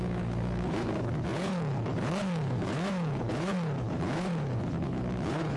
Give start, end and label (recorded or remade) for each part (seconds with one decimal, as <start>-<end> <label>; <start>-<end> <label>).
0.0-5.6 remade